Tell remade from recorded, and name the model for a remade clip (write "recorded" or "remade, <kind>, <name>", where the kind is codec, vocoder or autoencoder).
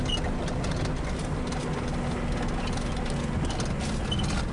recorded